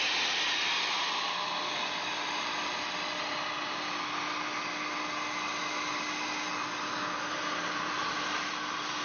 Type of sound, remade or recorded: recorded